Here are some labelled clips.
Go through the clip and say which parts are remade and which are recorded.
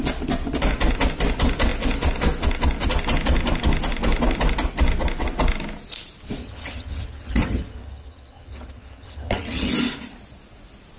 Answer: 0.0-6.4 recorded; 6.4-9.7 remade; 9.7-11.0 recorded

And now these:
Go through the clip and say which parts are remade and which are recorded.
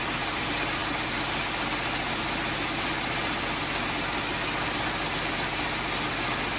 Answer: 0.0-6.6 recorded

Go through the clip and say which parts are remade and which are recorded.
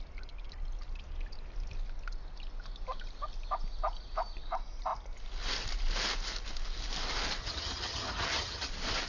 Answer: 0.0-7.4 recorded; 7.4-8.7 remade; 8.7-9.1 recorded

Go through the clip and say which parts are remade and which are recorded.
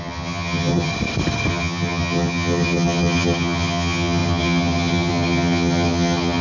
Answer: 0.0-0.9 remade; 0.9-1.5 recorded; 1.5-6.4 remade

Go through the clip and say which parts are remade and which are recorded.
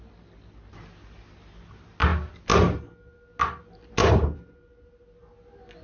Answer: 0.0-5.8 recorded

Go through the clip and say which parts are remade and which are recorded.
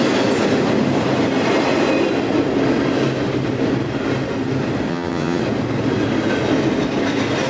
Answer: 0.0-4.9 recorded; 4.9-5.4 remade; 5.4-7.5 recorded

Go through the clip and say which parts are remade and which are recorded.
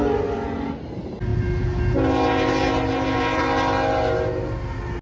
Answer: 0.0-5.0 recorded